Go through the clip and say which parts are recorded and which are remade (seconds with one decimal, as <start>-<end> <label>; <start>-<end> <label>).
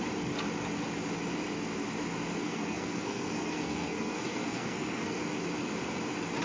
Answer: 0.0-2.4 recorded; 2.4-5.2 remade; 5.2-6.4 recorded